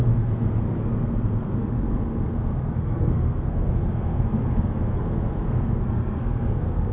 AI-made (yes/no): yes